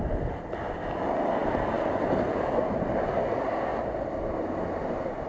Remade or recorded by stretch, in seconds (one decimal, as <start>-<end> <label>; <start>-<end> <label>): 0.0-5.3 recorded